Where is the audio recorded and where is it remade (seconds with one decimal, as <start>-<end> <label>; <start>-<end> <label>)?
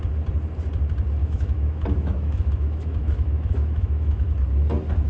0.0-1.2 recorded; 1.2-4.3 remade; 4.3-5.1 recorded